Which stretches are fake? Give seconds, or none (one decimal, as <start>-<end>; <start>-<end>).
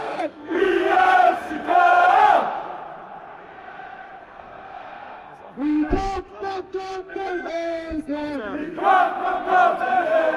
0.0-2.2; 4.2-8.8; 9.8-10.4